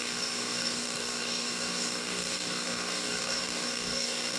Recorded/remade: remade